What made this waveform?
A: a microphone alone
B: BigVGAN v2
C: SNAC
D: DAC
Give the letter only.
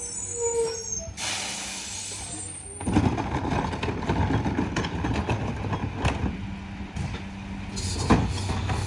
A